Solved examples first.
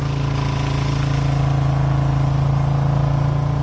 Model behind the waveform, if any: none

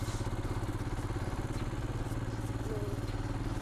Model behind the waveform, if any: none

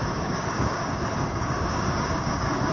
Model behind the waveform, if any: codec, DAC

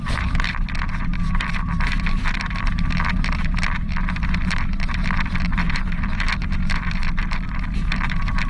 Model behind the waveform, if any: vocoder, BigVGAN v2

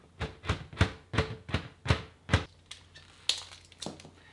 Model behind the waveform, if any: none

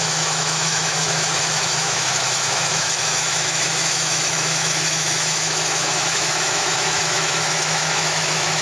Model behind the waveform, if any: autoencoder, DAC-VAE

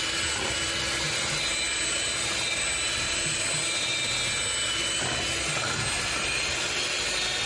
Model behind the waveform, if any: none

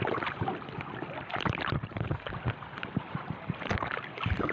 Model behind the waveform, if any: vocoder, BigVGAN v2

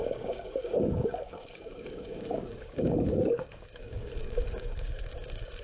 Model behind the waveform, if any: codec, DAC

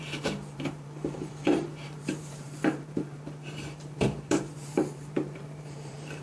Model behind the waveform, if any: vocoder, BigVGAN v2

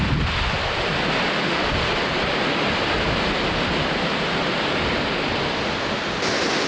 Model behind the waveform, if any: none